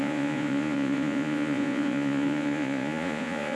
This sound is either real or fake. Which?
fake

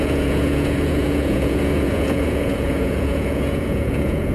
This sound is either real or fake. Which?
fake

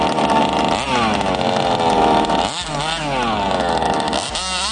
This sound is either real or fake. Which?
real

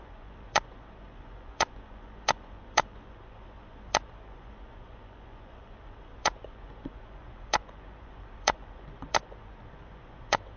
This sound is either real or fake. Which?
fake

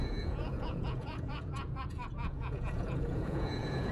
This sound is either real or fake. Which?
fake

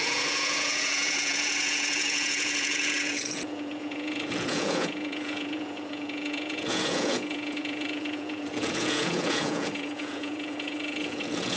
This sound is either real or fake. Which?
fake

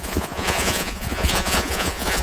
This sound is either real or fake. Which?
fake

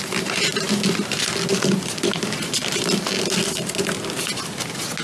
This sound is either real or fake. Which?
real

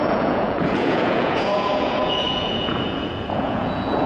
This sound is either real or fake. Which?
fake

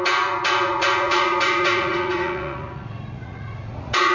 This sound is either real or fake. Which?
fake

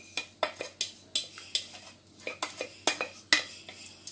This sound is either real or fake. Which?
real